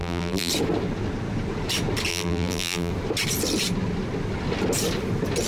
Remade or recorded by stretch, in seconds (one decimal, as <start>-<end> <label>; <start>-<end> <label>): 0.0-0.5 remade; 0.5-2.1 recorded; 2.1-2.9 remade; 2.9-5.5 recorded